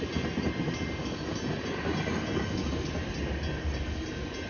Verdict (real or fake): real